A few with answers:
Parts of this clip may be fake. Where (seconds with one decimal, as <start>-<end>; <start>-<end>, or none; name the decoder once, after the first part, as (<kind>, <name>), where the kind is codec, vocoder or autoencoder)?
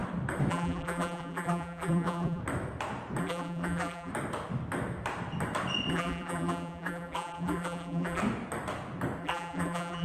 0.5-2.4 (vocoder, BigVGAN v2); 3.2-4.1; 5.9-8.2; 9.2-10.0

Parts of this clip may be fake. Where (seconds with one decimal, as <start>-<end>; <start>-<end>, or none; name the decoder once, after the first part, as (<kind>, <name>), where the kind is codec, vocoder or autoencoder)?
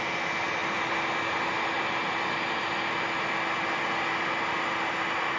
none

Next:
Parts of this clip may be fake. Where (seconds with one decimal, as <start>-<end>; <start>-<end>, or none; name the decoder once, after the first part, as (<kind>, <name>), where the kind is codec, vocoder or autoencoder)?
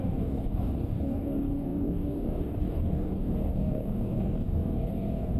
0.0-5.4 (codec, DAC)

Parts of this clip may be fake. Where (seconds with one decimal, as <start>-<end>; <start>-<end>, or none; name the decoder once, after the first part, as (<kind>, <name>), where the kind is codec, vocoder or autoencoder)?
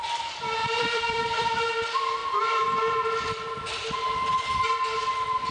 0.6-1.6 (vocoder, BigVGAN v2)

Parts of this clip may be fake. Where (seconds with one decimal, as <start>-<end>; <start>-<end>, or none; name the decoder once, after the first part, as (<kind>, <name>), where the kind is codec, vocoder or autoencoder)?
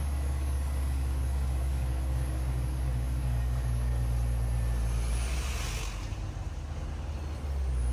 0.0-3.9 (codec, DAC)